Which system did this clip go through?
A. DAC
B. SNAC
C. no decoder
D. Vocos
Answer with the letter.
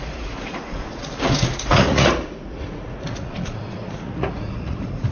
D